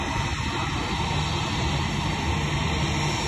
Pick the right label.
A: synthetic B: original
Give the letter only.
B